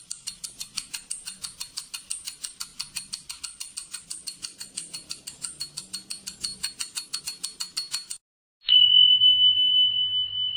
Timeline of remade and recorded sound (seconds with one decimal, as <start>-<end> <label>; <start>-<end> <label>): 0.0-10.6 recorded

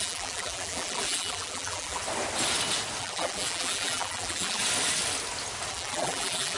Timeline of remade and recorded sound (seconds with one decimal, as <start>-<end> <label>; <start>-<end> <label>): 0.0-2.0 remade; 2.0-3.0 recorded; 3.0-4.6 remade; 4.6-5.7 recorded; 5.7-6.6 remade

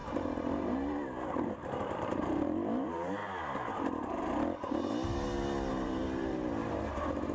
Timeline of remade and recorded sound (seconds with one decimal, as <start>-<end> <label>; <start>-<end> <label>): 0.0-3.2 remade; 3.2-5.7 recorded; 5.7-7.3 remade

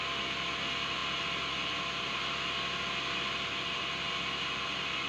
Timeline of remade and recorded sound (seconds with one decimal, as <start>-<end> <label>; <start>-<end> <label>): 0.0-5.1 recorded

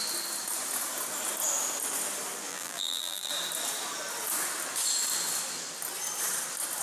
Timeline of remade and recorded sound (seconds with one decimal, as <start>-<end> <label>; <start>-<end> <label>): 0.0-2.5 recorded; 2.5-3.3 remade; 3.3-6.8 recorded